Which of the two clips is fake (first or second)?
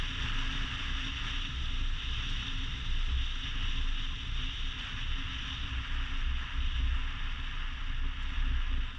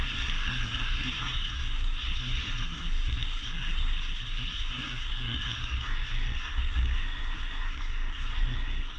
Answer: second